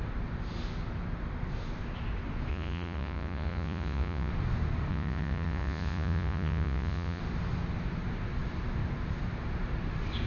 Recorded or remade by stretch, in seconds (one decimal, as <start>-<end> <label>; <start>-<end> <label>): 0.0-2.5 recorded; 2.5-4.3 remade; 4.3-4.9 recorded; 4.9-7.2 remade; 7.2-10.3 recorded